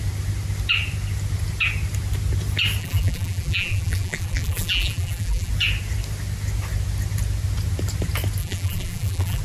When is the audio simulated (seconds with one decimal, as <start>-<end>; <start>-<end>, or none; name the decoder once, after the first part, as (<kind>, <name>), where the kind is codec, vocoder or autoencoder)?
2.8-5.5 (vocoder, BigVGAN v2); 8.4-9.4